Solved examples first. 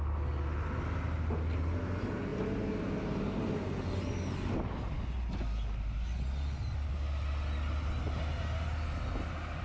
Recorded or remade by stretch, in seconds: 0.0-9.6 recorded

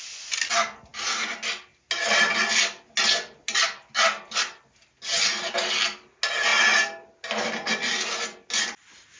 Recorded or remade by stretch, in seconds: 0.0-9.2 recorded

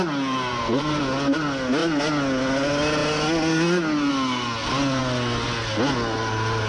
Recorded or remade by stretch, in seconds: 0.0-0.5 recorded; 0.5-1.0 remade; 1.0-6.7 recorded

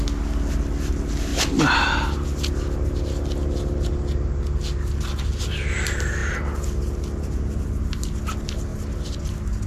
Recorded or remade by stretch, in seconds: 0.0-9.7 recorded

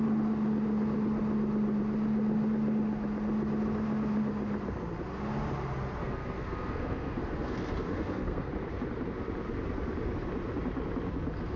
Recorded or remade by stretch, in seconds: 0.0-6.0 recorded; 6.0-8.5 remade; 8.5-11.6 recorded